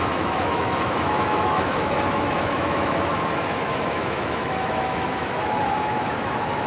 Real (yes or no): no